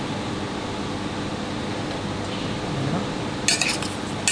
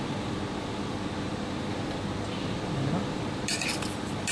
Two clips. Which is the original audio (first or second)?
first